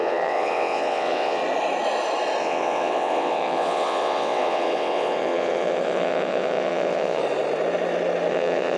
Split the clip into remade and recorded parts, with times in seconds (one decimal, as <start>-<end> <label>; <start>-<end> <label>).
0.0-1.4 remade; 1.4-2.4 recorded; 2.4-7.2 remade; 7.2-8.3 recorded; 8.3-8.8 remade